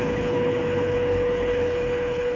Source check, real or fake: fake